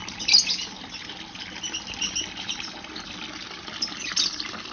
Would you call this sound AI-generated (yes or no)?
no